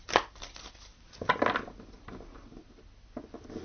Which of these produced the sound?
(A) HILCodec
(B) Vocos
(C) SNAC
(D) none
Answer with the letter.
D